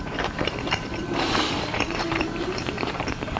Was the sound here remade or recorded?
remade